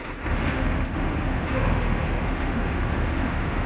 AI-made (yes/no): yes